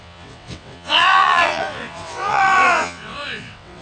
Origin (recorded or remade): remade